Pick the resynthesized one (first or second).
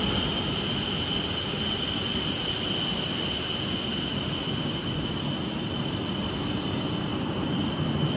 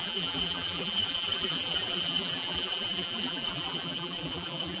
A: second